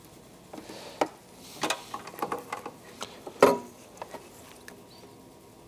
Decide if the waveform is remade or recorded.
recorded